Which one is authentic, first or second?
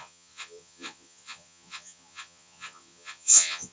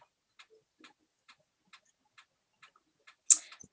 second